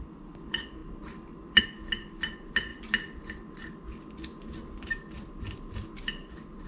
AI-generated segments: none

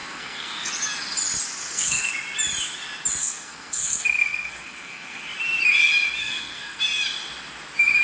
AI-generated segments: 0.0-0.7 (codec, SNAC); 1.6-2.1; 3.2-5.2; 6.2-6.8

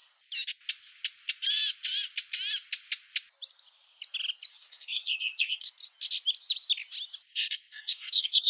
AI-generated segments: 4.5-5.7 (codec, SNAC); 7.3-8.5

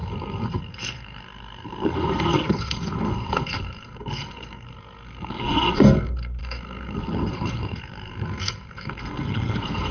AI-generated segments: 0.0-9.9 (codec, SNAC)